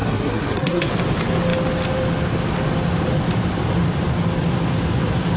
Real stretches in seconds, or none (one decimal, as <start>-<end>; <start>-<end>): 0.9-5.4

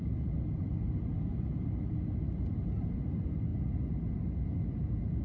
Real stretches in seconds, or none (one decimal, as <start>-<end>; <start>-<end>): 0.0-5.2

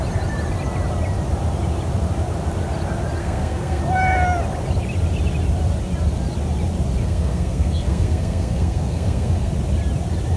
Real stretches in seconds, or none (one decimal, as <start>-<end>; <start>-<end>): 0.0-3.2; 3.8-7.0; 9.5-10.4

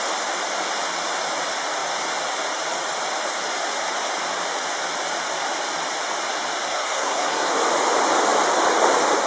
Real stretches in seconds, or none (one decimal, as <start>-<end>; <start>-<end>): 0.0-6.7; 7.5-9.3